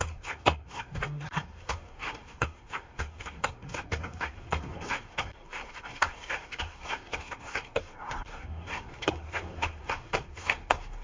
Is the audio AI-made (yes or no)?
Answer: yes